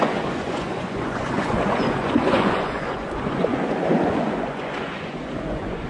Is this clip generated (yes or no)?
yes